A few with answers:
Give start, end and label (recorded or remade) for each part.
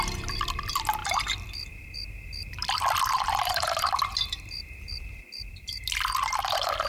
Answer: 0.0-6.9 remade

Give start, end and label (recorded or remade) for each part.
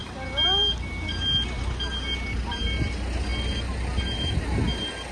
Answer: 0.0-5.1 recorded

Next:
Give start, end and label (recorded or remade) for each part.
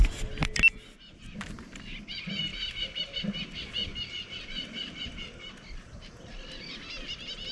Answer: 0.0-2.5 recorded; 2.5-7.0 remade; 7.0-7.5 recorded